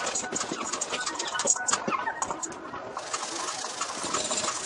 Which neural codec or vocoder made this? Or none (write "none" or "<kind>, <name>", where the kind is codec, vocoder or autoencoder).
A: none